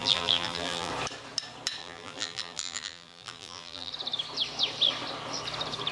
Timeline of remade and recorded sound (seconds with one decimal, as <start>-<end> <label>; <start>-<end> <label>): 0.0-0.9 remade; 0.9-1.8 recorded; 1.8-3.9 remade; 3.9-5.9 recorded